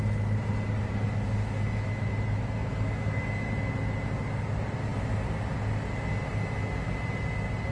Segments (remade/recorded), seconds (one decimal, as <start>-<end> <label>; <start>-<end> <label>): 0.0-1.4 recorded; 1.4-3.2 remade; 3.2-7.7 recorded